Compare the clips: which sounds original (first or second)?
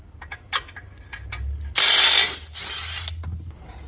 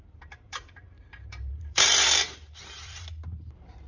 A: first